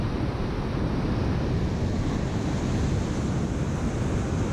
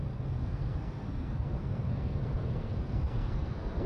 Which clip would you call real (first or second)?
first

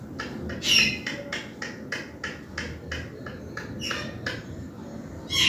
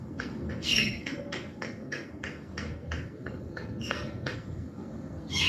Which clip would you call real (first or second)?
first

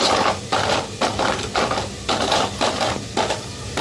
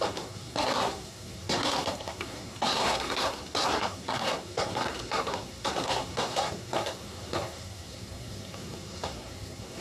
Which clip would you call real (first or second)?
first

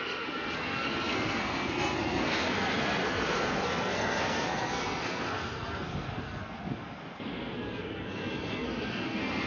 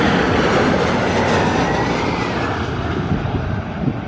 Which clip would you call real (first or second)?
second